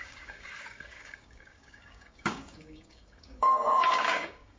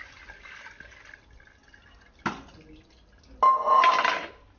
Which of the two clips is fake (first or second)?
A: first